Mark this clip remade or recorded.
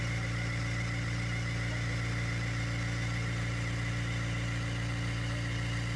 recorded